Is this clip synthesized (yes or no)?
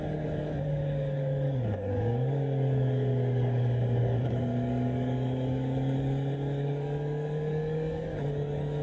yes